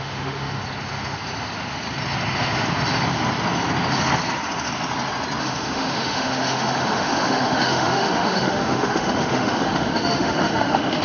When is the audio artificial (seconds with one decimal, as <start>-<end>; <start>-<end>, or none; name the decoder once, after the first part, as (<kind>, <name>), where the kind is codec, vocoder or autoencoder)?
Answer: 0.0-0.6 (autoencoder, DAC-VAE); 5.4-11.0